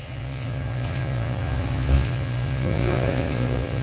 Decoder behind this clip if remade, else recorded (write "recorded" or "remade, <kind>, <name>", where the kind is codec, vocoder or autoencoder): remade, vocoder, Vocos